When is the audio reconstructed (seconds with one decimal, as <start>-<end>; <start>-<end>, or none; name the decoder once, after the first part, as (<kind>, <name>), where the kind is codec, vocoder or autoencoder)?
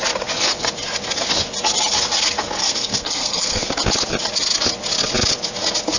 2.6-3.7 (codec, SNAC)